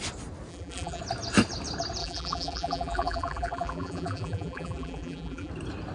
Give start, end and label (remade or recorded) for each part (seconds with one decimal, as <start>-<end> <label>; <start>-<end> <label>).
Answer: 0.0-0.5 recorded; 0.5-1.0 remade; 1.0-2.0 recorded; 2.0-5.5 remade; 5.5-5.9 recorded